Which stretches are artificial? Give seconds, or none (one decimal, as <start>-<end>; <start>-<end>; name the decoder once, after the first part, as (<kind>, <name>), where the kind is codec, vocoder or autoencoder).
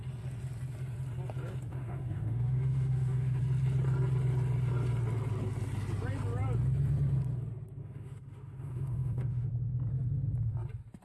1.7-3.4 (autoencoder, DAC-VAE); 7.8-9.5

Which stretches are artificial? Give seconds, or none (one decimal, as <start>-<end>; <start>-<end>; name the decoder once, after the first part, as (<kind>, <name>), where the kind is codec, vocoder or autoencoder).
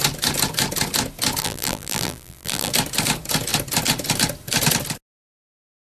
1.4-2.7 (vocoder, BigVGAN v2)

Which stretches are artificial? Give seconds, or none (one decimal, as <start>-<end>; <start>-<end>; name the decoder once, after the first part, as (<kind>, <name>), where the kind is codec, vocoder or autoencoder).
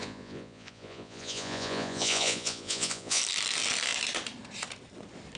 0.0-3.2 (vocoder, Vocos)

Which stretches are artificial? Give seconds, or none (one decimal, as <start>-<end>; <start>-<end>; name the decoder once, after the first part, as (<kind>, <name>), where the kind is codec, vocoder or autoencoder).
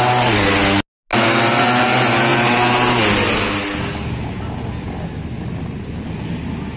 none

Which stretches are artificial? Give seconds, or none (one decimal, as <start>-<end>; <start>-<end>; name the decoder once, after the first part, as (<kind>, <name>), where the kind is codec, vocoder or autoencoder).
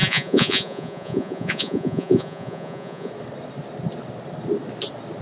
0.0-3.1 (vocoder, Vocos)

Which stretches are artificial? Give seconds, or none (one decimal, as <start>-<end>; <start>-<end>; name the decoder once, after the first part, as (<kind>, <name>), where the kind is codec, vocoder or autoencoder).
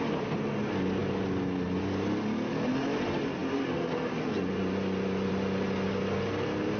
3.4-5.3 (vocoder, BigVGAN v2)